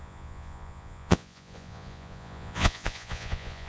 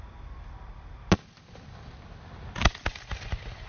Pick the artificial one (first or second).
first